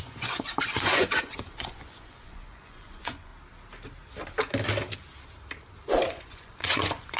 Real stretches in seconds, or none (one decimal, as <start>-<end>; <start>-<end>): 3.3-6.1